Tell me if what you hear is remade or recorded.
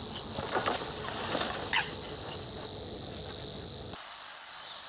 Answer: recorded